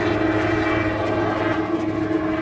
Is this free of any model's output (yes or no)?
yes